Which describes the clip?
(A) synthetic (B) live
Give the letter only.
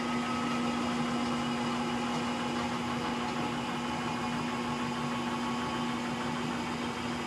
B